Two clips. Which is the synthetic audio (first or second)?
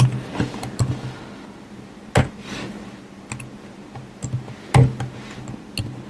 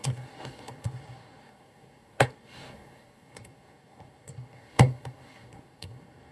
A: second